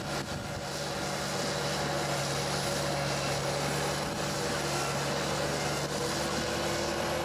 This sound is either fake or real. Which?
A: real